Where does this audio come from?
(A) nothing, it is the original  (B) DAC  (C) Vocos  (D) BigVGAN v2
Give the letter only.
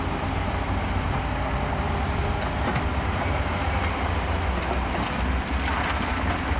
A